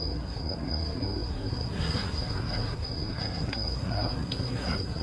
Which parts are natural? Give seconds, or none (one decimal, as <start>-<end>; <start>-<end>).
none